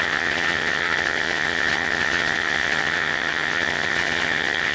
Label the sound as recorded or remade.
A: remade